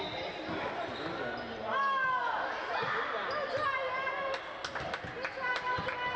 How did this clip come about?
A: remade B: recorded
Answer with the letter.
B